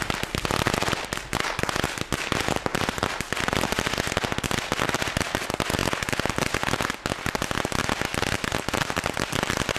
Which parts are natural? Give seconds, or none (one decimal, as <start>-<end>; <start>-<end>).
0.0-2.7; 3.9-9.8